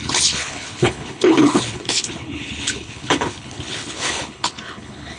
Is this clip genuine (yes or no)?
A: no